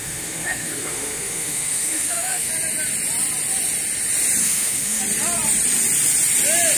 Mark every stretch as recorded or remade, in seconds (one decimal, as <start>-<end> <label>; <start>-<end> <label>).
0.0-2.5 remade; 2.5-4.4 recorded; 4.4-5.0 remade; 5.0-6.8 recorded

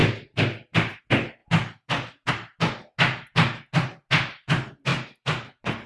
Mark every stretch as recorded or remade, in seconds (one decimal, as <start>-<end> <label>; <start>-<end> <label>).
0.0-1.0 remade; 1.0-4.9 recorded; 4.9-5.9 remade

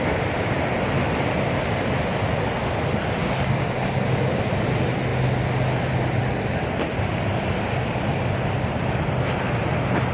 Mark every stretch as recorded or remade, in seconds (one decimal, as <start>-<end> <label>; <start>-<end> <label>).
0.0-3.2 recorded; 3.2-4.4 remade; 4.4-10.1 recorded